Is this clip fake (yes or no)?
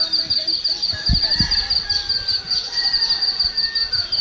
no